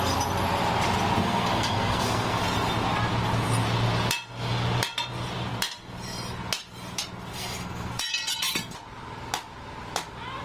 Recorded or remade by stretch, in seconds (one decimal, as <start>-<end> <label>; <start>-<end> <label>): 0.0-1.2 recorded; 1.2-2.4 remade; 2.4-7.3 recorded; 7.3-8.0 remade; 8.0-10.4 recorded